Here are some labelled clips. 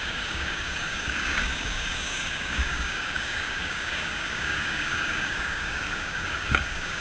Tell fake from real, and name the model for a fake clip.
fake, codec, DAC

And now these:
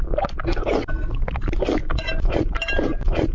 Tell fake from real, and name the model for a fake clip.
real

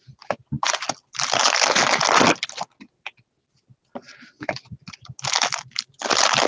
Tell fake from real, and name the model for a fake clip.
real